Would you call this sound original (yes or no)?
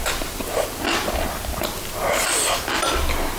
yes